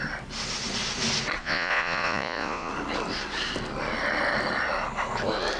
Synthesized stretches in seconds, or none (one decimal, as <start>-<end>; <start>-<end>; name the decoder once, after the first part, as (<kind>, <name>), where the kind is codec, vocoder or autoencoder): 1.4-2.7 (vocoder, Vocos)